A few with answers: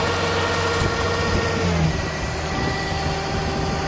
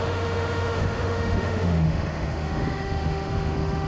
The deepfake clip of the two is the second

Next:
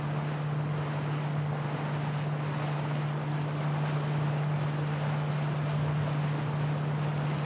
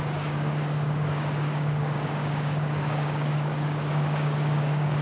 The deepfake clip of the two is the second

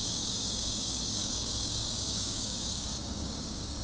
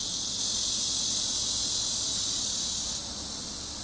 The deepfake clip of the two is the first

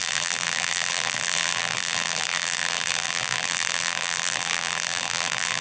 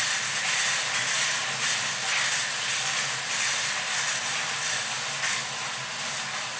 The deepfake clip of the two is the first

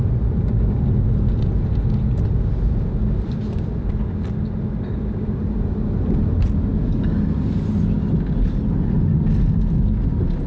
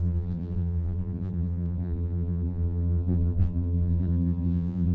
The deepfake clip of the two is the second